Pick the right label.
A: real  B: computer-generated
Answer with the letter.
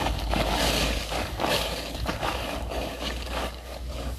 B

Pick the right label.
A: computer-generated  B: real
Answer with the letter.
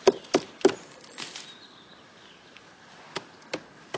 B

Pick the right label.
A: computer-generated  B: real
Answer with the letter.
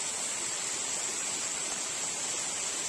B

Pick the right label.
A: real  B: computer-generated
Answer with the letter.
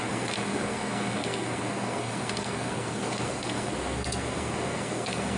B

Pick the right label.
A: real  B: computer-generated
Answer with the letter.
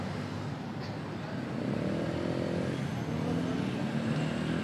A